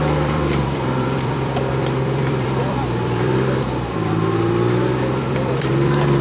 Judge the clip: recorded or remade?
remade